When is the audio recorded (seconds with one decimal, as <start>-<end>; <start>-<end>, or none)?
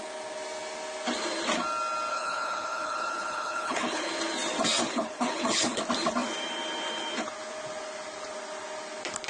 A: 0.0-2.1; 4.1-4.8; 5.8-9.3